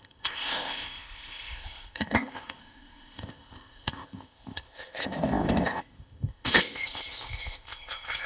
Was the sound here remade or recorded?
remade